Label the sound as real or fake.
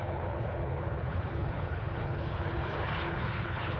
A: fake